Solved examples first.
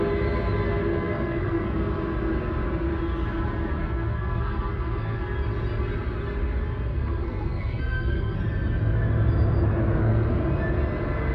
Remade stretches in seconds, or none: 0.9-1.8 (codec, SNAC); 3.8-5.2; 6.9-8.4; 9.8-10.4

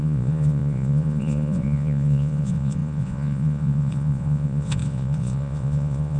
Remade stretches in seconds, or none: 0.0-6.2 (vocoder, Vocos)

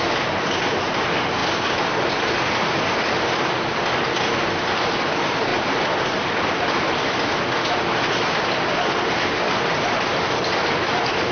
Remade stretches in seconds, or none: none